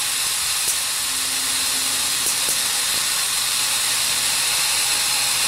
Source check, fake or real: real